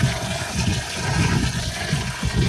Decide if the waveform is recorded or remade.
remade